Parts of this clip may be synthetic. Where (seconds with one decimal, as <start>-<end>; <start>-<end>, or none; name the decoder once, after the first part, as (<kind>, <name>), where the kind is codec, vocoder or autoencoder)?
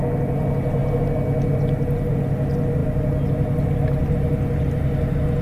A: none